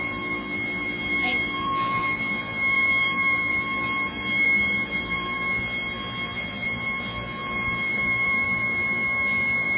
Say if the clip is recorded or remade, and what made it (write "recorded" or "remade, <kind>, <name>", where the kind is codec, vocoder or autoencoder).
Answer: remade, vocoder, BigVGAN v2